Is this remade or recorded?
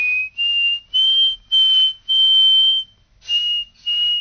recorded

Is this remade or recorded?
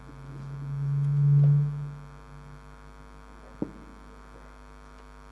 recorded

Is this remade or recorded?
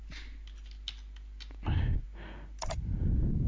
recorded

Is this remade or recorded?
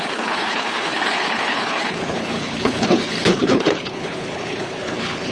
remade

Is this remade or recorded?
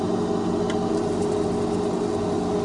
recorded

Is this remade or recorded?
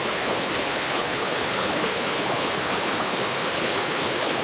remade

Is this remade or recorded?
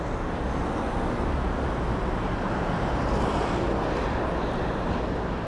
recorded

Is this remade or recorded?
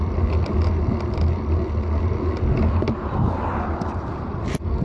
recorded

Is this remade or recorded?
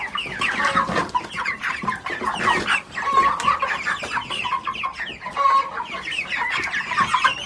recorded